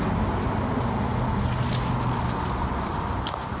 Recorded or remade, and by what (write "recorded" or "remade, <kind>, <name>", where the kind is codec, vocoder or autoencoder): recorded